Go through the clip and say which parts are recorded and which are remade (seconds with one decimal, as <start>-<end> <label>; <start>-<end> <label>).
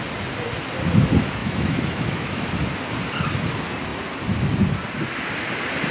0.0-1.4 recorded; 1.4-2.5 remade; 2.5-5.9 recorded